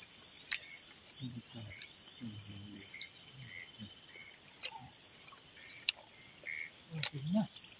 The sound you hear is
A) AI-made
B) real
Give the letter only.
B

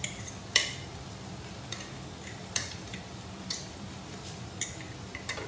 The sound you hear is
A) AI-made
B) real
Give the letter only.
A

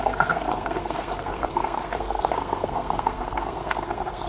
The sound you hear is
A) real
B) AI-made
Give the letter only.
B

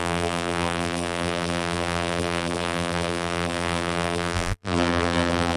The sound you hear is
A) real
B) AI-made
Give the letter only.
B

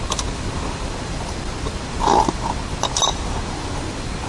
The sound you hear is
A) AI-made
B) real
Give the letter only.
B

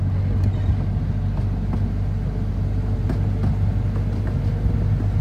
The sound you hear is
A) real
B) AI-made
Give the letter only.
A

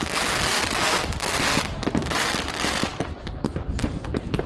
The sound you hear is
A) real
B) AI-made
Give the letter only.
A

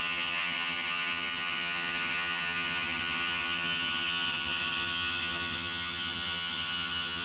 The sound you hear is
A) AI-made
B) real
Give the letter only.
A